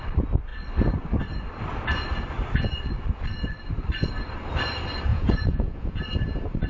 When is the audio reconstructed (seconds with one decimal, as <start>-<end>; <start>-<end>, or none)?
5.1-6.0

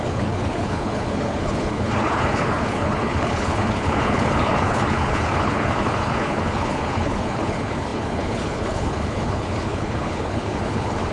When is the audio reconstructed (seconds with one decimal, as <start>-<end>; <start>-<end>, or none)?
0.0-11.1

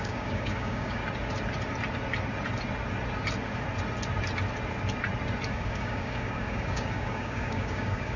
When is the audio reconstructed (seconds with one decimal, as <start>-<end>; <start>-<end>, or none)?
0.0-1.0; 5.5-8.2

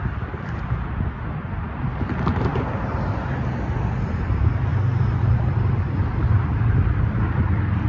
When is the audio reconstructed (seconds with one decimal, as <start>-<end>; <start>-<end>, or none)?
0.0-2.5; 3.1-7.9

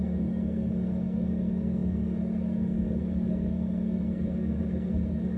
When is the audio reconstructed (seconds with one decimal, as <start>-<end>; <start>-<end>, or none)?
0.0-5.4

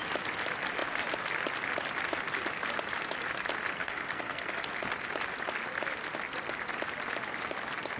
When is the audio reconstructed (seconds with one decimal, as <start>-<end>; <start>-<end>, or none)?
3.7-4.5

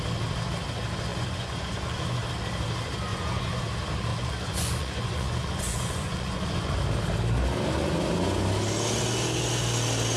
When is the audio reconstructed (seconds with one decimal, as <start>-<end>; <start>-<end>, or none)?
1.1-2.2; 3.1-3.6; 4.1-6.7